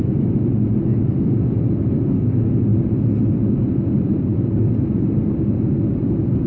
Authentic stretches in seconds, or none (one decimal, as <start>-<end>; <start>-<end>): 2.7-3.3; 4.3-6.5